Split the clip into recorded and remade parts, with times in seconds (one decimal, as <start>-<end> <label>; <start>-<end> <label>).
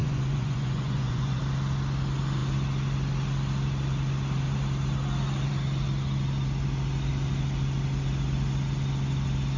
0.0-1.4 remade; 1.4-9.6 recorded